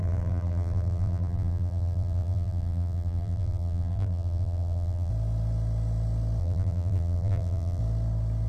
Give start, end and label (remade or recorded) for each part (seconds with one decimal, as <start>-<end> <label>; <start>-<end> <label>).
0.0-5.1 remade; 5.1-6.4 recorded; 6.4-7.8 remade; 7.8-8.5 recorded